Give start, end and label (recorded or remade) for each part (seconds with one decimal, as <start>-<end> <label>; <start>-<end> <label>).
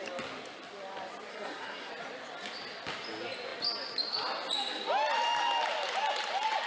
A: 0.0-1.3 recorded; 1.3-1.9 remade; 1.9-6.7 recorded